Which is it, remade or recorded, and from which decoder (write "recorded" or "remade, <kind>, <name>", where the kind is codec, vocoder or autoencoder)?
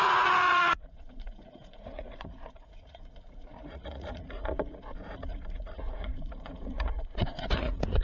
remade, vocoder, Vocos